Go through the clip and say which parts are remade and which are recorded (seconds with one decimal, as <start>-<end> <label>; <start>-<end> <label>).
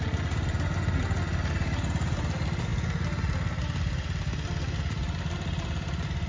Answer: 0.0-6.3 recorded